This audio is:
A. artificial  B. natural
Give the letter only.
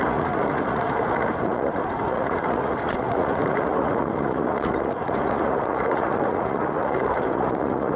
A